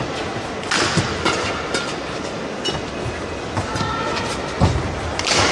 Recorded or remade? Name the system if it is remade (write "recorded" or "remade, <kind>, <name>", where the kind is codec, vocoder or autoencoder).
recorded